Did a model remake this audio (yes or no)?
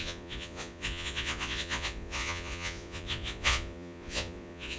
yes